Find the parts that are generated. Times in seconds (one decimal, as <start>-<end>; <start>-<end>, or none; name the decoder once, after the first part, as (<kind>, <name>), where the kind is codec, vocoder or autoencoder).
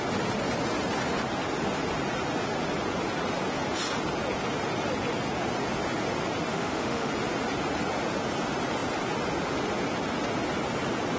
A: 6.5-7.1 (autoencoder, DAC-VAE)